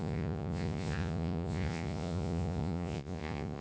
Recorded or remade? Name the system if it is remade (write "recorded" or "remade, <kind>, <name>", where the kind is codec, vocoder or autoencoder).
remade, vocoder, Vocos